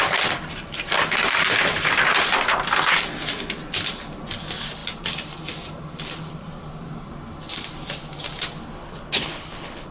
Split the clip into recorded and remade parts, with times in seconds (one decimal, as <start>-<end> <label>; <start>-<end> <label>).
0.0-8.8 recorded; 8.8-9.9 remade